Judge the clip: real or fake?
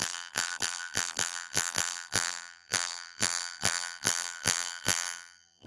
fake